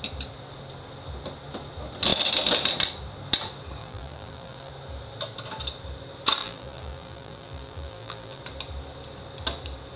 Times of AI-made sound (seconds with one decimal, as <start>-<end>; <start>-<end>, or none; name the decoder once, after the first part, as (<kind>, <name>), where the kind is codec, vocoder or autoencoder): 3.8-4.7 (vocoder, BigVGAN v2); 6.4-8.4